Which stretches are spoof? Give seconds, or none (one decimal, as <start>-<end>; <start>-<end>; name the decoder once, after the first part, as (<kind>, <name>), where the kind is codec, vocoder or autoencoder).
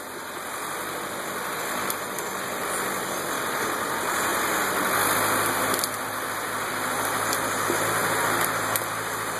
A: 0.0-4.3 (vocoder, BigVGAN v2); 6.0-8.0; 8.8-9.4